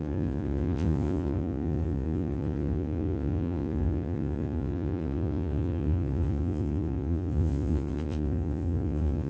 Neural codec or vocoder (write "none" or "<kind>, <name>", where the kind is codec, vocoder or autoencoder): vocoder, Vocos